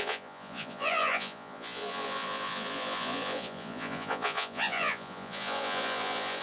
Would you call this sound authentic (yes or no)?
no